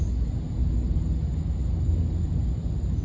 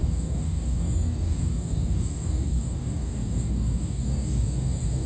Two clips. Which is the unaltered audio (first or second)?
first